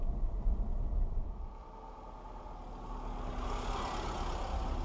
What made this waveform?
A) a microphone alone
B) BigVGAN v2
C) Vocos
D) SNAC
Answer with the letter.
A